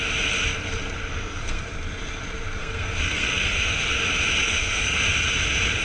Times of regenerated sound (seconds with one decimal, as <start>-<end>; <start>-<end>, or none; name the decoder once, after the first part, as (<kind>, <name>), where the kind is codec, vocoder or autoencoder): 1.1-1.7 (codec, SNAC); 2.6-3.9; 4.4-5.0